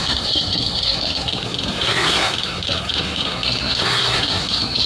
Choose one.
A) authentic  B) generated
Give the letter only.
B